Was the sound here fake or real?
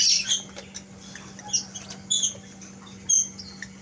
real